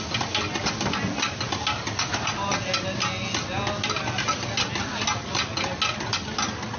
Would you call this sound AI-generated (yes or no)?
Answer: no